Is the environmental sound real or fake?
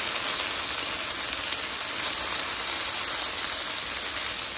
real